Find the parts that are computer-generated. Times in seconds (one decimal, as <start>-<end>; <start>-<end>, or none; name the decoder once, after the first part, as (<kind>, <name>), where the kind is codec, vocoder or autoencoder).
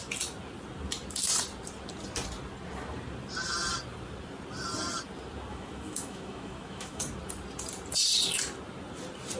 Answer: 5.5-7.0 (autoencoder, DAC-VAE)